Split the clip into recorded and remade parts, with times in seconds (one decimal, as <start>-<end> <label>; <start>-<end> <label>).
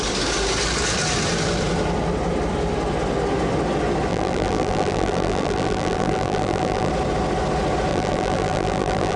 0.0-4.1 recorded; 4.1-6.9 remade; 6.9-7.9 recorded; 7.9-9.2 remade